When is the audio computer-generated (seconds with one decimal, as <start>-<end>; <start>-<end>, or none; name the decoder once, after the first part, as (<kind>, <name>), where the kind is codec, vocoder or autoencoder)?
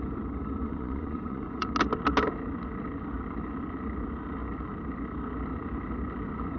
0.6-1.7 (vocoder, Vocos)